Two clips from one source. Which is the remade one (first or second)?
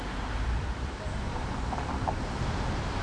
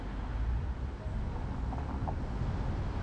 first